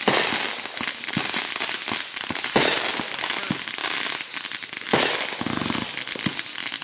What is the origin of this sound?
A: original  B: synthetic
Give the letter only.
A